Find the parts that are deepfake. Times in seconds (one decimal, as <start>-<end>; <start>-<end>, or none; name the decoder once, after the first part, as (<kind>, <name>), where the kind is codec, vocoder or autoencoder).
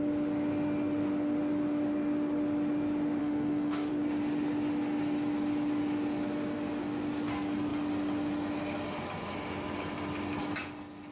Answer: 3.2-3.9 (autoencoder, DAC-VAE)